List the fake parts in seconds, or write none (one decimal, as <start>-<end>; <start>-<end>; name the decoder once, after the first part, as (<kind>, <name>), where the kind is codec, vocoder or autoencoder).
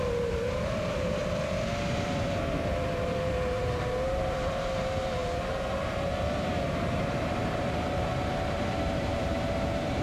0.0-1.2 (vocoder, BigVGAN v2); 1.9-10.0